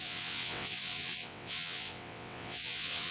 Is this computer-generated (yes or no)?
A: yes